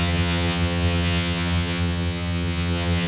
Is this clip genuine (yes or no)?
no